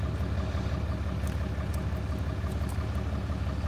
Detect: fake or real real